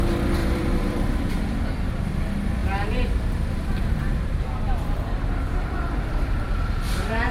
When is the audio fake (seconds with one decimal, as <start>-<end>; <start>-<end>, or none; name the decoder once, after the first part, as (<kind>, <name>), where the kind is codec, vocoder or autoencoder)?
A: 0.4-1.3 (vocoder, BigVGAN v2); 2.6-7.3